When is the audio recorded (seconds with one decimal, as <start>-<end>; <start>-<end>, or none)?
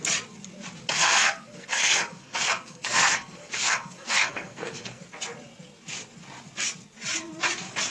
0.0-0.9; 5.0-7.9